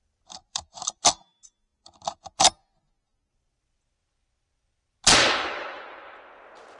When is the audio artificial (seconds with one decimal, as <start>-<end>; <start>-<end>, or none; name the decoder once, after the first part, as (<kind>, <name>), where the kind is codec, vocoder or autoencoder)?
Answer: 0.4-1.0 (vocoder, BigVGAN v2)